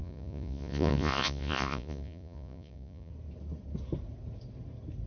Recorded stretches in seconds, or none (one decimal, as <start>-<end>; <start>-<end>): 3.1-5.1